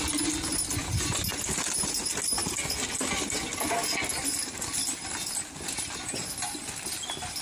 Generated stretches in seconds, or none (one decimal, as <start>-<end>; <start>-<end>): none